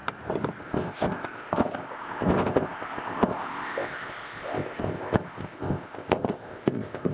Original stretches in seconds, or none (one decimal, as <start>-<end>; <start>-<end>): 0.0-0.6